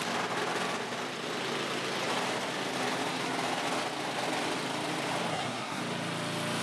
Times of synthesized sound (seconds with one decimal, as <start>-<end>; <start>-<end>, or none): 5.3-5.8